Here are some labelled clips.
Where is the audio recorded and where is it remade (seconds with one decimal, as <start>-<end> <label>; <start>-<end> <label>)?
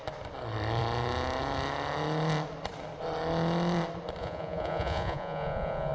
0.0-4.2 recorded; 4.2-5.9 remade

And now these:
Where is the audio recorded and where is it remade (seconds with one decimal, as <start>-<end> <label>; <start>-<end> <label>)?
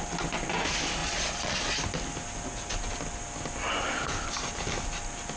0.0-1.0 recorded; 1.0-1.6 remade; 1.6-5.4 recorded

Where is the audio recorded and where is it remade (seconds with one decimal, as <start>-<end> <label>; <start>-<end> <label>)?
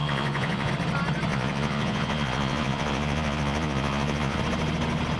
0.0-0.7 remade; 0.7-1.3 recorded; 1.3-4.4 remade; 4.4-5.2 recorded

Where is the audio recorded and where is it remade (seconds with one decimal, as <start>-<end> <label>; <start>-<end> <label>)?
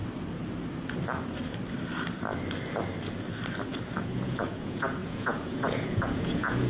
0.0-4.0 recorded; 4.0-6.7 remade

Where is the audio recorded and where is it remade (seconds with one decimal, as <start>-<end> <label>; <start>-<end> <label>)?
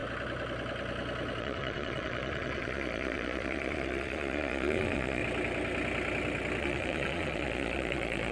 0.0-1.4 recorded; 1.4-5.2 remade; 5.2-6.6 recorded; 6.6-8.3 remade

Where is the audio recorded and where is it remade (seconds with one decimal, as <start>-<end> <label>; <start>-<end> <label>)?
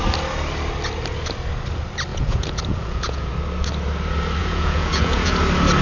0.0-2.1 recorded; 2.1-3.3 remade; 3.3-4.4 recorded; 4.4-5.3 remade; 5.3-5.8 recorded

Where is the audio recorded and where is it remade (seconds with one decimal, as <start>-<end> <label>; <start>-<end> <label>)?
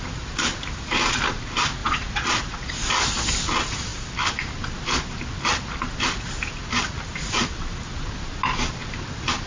0.0-1.8 recorded; 1.8-2.7 remade; 2.7-9.5 recorded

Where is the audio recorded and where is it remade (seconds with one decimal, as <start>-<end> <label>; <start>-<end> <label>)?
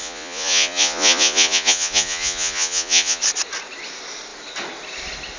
0.0-3.2 remade; 3.2-5.4 recorded